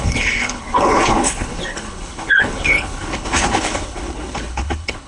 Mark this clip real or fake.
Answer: fake